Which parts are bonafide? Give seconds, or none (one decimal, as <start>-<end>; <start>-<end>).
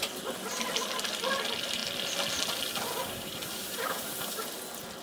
0.0-5.0